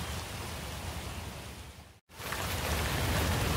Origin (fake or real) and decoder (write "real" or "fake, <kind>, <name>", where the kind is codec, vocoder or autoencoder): real